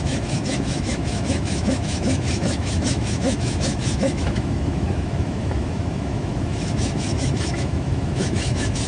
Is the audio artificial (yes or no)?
yes